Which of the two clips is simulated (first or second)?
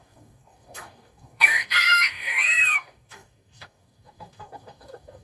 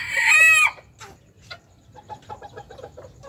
first